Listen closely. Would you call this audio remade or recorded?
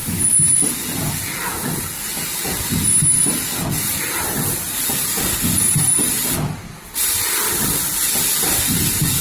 recorded